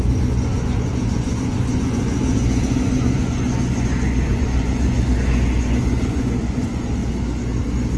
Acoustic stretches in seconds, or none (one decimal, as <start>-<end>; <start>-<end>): 7.0-7.6